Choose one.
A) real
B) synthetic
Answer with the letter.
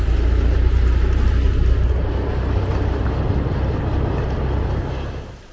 A